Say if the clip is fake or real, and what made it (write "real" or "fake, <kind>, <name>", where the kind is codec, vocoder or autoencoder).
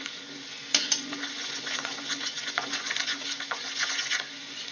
fake, vocoder, Vocos